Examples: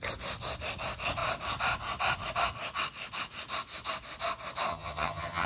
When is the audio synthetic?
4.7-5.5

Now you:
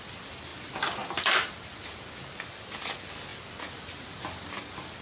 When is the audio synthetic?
none

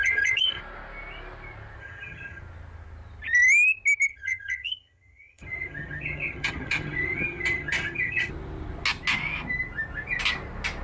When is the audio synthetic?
0.0-0.6; 1.8-2.4; 4.1-8.3

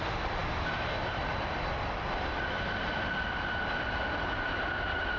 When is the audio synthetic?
none

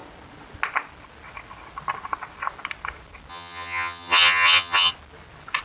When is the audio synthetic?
3.3-4.9

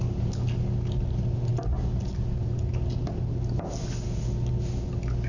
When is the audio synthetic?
none

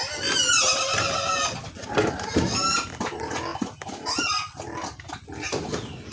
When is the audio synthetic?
none

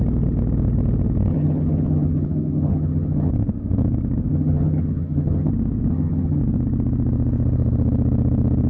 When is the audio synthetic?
1.3-3.3; 4.3-5.5; 5.9-6.4